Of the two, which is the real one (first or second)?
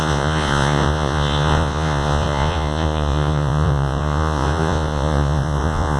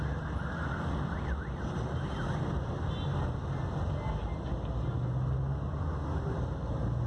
second